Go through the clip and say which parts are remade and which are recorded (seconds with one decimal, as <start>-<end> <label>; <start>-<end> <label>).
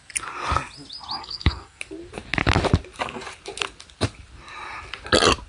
0.0-1.2 recorded; 1.2-1.8 remade; 1.8-5.5 recorded